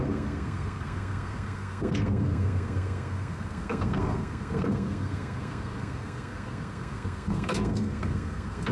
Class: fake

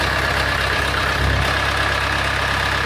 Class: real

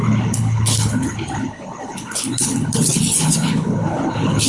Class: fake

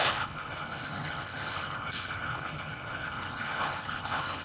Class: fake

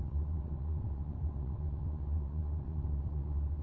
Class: fake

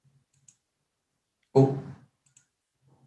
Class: real